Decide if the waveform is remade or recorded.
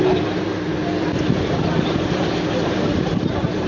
recorded